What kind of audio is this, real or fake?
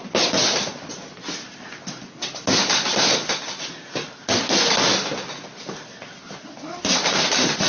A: real